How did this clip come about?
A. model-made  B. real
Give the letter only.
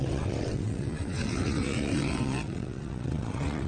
A